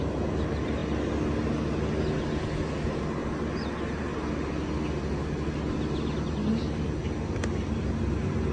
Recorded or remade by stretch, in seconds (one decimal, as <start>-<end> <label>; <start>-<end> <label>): 0.0-7.0 recorded; 7.0-7.7 remade; 7.7-8.5 recorded